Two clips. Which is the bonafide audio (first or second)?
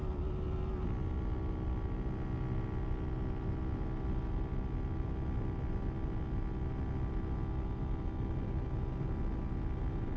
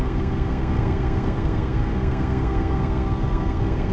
first